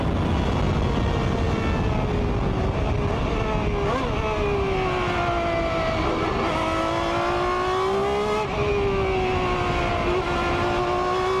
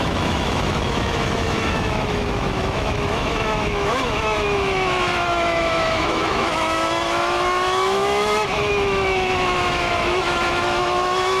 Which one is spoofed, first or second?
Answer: second